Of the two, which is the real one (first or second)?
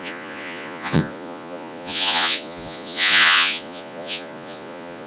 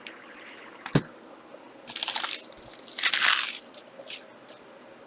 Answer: second